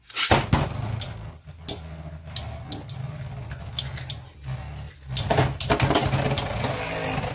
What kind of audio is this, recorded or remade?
recorded